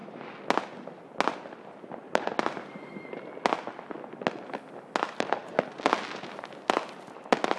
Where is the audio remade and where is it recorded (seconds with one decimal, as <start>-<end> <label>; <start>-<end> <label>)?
0.0-7.6 recorded